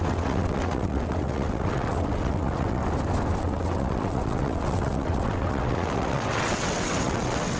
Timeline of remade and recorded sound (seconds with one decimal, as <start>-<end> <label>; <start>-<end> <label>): 0.0-2.8 remade; 2.8-3.4 recorded; 3.4-7.6 remade